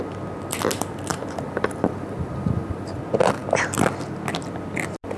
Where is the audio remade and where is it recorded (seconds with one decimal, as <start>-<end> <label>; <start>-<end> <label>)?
0.0-1.1 recorded; 1.1-3.0 remade; 3.0-5.2 recorded